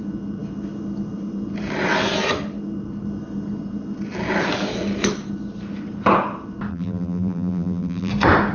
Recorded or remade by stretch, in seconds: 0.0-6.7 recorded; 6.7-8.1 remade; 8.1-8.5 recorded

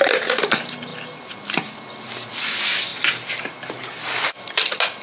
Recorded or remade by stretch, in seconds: 0.0-5.0 recorded

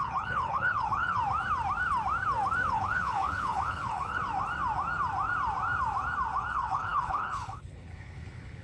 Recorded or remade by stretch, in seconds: 0.0-1.2 remade; 1.2-2.7 recorded; 2.7-4.2 remade; 4.2-6.5 recorded; 6.5-8.6 remade

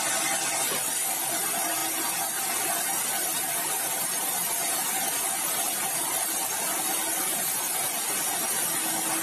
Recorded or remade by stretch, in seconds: 0.0-9.2 recorded

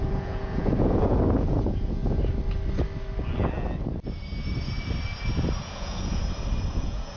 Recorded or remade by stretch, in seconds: 0.0-2.0 remade; 2.0-5.6 recorded; 5.6-6.2 remade; 6.2-6.7 recorded; 6.7-7.2 remade

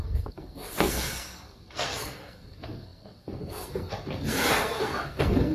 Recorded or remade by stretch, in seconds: 0.0-5.5 remade